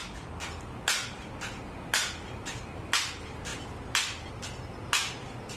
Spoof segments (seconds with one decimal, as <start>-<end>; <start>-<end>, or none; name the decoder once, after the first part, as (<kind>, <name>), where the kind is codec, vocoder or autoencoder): none